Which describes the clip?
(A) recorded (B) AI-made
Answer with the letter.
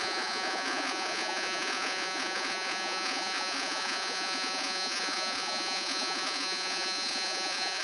B